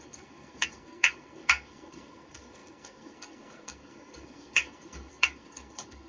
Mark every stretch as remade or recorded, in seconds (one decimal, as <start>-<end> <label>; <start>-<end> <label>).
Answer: 0.0-6.1 remade

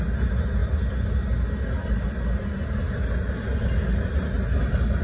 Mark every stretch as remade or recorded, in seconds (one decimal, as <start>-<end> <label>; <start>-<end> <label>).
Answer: 0.0-5.0 recorded

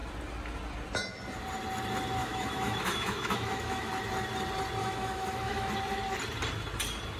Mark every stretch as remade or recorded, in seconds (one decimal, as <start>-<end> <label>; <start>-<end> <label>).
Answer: 0.0-2.2 recorded; 2.2-3.9 remade; 3.9-4.8 recorded; 4.8-5.7 remade; 5.7-7.2 recorded

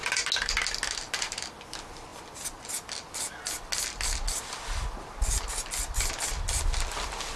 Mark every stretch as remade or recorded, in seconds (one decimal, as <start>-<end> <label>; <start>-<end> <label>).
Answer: 0.0-7.4 recorded

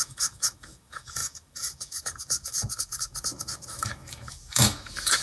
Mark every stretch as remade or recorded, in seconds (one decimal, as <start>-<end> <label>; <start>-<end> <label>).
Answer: 0.0-5.2 remade